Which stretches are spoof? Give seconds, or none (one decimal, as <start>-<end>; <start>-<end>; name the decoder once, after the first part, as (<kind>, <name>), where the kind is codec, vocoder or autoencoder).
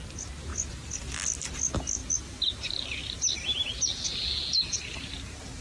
none